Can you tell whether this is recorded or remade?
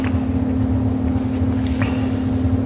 recorded